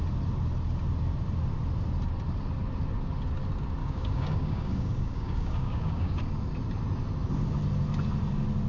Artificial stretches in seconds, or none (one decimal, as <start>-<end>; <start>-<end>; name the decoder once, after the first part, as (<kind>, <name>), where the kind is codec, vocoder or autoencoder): 3.8-6.2 (codec, DAC)